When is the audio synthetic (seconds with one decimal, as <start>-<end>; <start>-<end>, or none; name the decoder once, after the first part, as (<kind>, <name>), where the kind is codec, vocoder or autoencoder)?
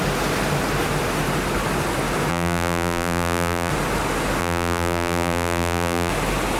2.3-3.7 (vocoder, BigVGAN v2); 4.4-6.1